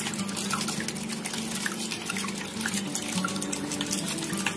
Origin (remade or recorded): recorded